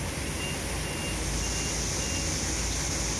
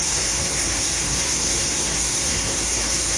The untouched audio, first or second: first